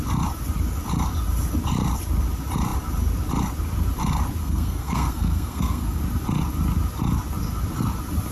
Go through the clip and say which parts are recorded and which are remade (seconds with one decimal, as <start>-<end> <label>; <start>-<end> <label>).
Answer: 0.0-4.4 recorded; 4.4-6.0 remade; 6.0-8.3 recorded